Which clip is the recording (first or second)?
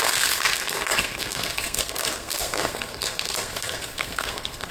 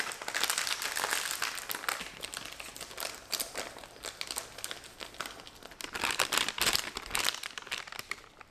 second